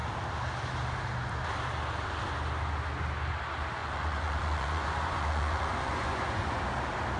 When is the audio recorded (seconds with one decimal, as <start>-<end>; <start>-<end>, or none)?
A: 0.0-3.8; 6.6-7.2